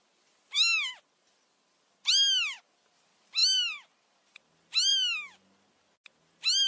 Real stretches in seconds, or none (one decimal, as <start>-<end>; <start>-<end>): 0.0-6.7